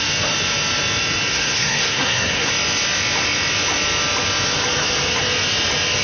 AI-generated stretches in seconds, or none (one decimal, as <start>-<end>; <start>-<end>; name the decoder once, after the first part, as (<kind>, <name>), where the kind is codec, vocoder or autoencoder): 1.3-2.5 (codec, SNAC)